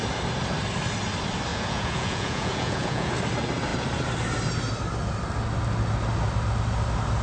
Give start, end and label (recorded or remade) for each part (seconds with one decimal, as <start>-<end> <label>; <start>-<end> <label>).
0.0-1.5 recorded; 1.5-3.1 remade; 3.1-7.2 recorded